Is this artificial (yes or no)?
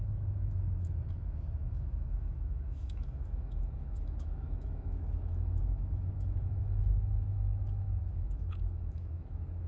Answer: yes